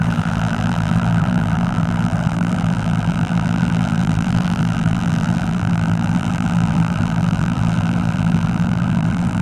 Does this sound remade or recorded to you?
remade